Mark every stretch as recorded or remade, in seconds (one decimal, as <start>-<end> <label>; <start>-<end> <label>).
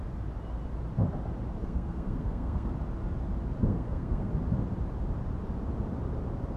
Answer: 0.0-1.6 recorded; 1.6-2.7 remade; 2.7-3.6 recorded; 3.6-4.3 remade; 4.3-6.6 recorded